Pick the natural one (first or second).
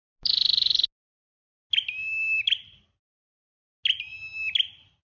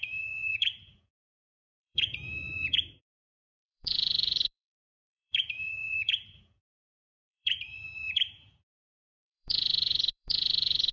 first